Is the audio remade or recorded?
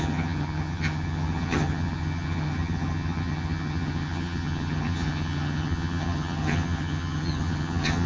remade